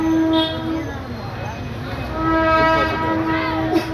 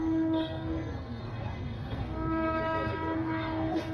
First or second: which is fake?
second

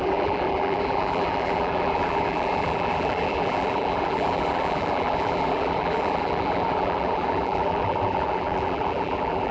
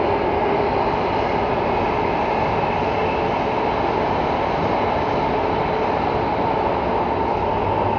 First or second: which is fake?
first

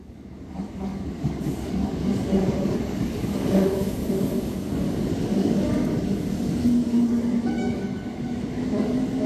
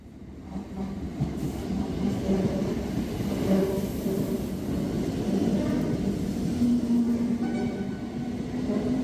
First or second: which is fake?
first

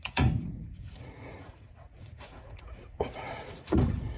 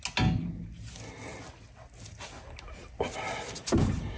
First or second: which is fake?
first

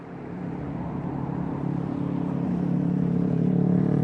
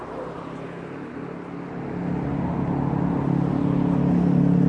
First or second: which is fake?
first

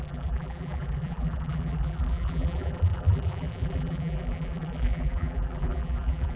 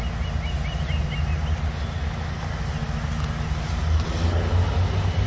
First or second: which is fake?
first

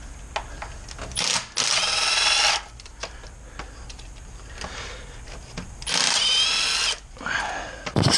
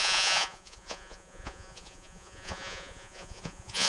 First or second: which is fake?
second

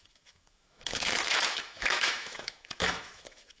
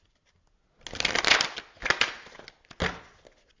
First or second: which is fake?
first